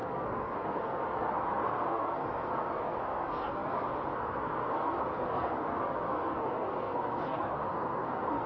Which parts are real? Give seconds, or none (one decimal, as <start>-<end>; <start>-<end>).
none